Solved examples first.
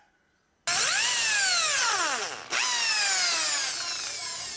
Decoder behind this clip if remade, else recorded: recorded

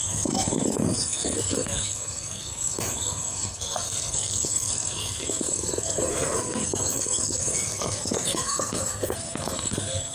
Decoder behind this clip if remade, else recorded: remade, codec, SNAC